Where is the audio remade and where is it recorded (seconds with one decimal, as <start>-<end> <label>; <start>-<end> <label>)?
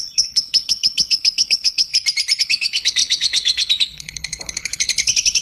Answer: 0.0-1.9 remade; 1.9-2.4 recorded; 2.4-5.4 remade